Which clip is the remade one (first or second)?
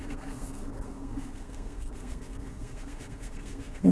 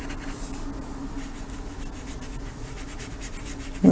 first